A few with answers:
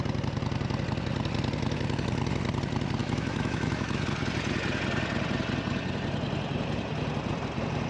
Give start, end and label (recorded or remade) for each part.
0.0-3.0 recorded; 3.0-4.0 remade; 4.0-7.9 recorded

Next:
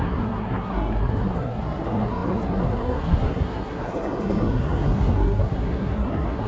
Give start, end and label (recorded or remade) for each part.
0.0-6.5 remade

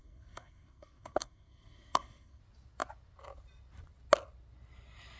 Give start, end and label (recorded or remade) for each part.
0.0-2.4 remade; 2.4-5.2 recorded

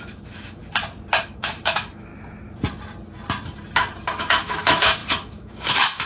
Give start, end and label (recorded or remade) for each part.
0.0-0.6 remade; 0.6-1.2 recorded; 1.2-2.1 remade; 2.1-4.2 recorded; 4.2-6.1 remade

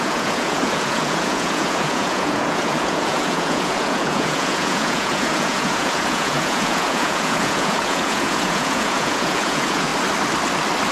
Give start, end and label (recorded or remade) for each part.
0.0-9.9 remade; 9.9-10.9 recorded

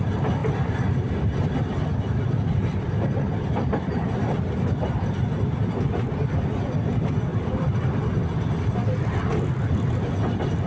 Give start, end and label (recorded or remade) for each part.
0.0-2.6 recorded; 2.6-4.2 remade; 4.2-7.3 recorded; 7.3-8.0 remade; 8.0-10.7 recorded